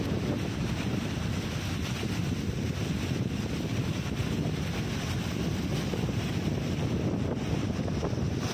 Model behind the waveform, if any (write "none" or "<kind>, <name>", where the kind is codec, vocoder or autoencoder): none